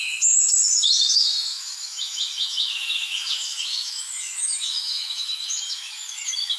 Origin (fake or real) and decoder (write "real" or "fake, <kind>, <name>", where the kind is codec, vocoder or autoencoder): fake, autoencoder, DAC-VAE